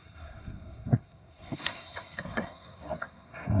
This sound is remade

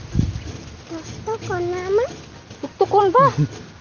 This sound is recorded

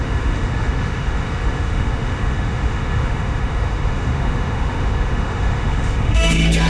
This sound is remade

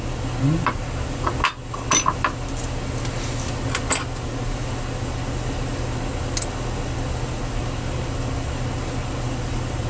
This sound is recorded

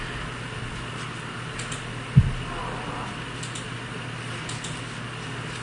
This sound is recorded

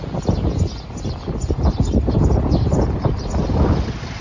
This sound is recorded